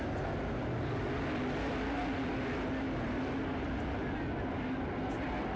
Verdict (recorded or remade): recorded